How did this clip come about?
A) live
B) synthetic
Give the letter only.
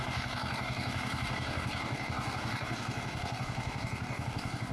B